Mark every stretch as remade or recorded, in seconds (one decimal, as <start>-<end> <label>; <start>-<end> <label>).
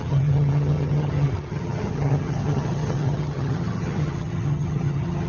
0.0-5.3 remade